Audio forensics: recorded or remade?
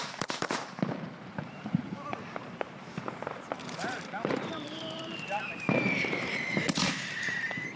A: remade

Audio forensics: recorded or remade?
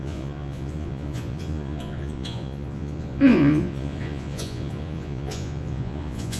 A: remade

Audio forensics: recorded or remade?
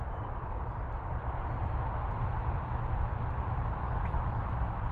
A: recorded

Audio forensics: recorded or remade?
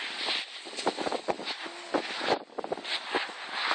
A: recorded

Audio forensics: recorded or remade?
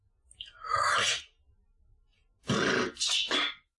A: recorded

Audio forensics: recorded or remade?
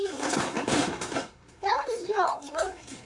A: remade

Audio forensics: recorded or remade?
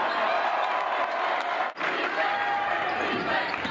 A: recorded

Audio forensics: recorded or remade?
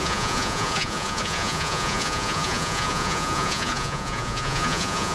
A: remade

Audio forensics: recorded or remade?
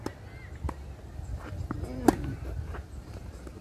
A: recorded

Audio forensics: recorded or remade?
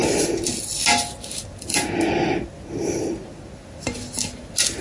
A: recorded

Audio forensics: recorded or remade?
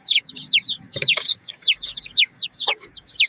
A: remade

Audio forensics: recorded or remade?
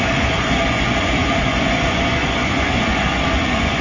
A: remade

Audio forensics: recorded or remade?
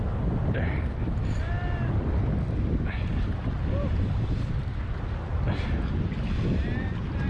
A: recorded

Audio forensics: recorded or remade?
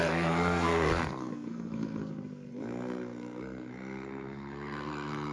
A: remade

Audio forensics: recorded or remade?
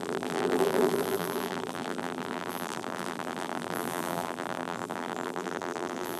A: remade